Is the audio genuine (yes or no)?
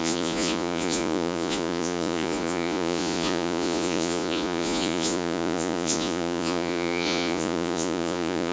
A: no